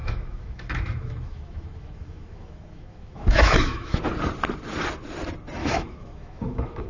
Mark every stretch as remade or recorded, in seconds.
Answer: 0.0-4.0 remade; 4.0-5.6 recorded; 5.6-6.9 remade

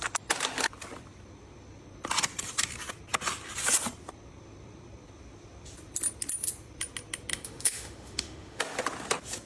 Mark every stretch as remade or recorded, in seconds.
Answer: 0.0-7.3 recorded; 7.3-8.6 remade; 8.6-9.5 recorded